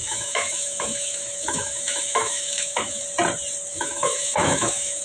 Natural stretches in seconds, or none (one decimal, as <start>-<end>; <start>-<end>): 3.0-3.7